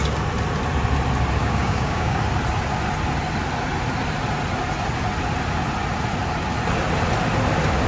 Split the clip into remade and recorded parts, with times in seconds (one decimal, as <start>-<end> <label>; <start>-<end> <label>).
0.0-1.4 recorded; 1.4-2.2 remade; 2.2-7.9 recorded